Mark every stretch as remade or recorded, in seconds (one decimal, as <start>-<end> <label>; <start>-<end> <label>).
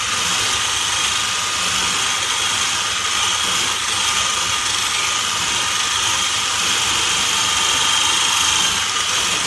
0.0-5.4 recorded; 5.4-8.2 remade; 8.2-9.5 recorded